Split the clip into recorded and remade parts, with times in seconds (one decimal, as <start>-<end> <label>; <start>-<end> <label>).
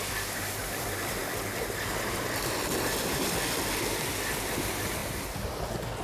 0.0-5.0 recorded; 5.0-5.6 remade; 5.6-6.0 recorded